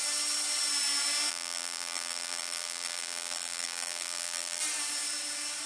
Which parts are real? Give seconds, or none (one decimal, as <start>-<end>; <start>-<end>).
0.0-1.3; 4.6-5.7